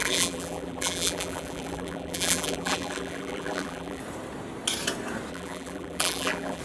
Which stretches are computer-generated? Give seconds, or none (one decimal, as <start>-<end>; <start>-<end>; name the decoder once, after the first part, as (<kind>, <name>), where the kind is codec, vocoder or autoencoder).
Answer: 0.0-4.0 (vocoder, BigVGAN v2); 5.3-6.6